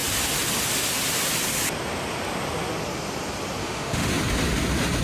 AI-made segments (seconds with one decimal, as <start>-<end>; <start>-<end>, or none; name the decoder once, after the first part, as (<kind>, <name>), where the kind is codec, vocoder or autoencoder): 3.6-4.1 (autoencoder, DAC-VAE)